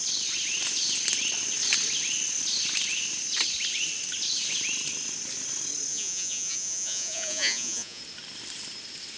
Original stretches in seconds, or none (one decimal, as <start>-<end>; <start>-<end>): 0.0-5.9; 8.0-9.2